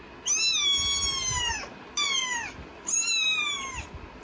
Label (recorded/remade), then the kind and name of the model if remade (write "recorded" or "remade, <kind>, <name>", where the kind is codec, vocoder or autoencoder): recorded